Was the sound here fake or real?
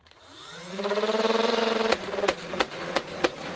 fake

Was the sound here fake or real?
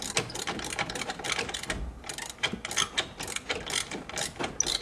real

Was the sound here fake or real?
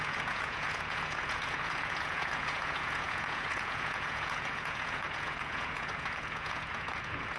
fake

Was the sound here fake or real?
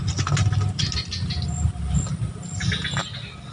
real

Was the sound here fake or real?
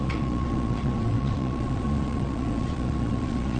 fake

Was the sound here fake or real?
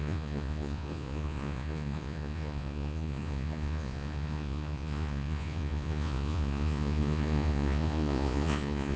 fake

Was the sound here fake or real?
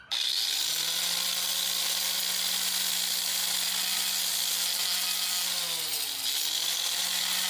real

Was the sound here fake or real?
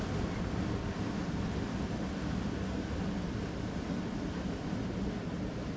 real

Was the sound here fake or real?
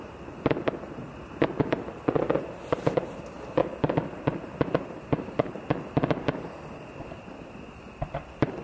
real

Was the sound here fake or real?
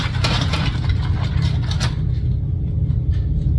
real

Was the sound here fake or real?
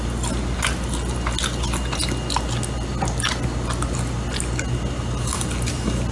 real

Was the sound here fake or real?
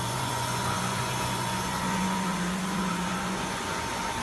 fake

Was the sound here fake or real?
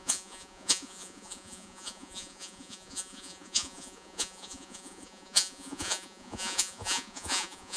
fake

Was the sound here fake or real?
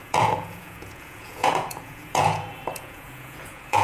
fake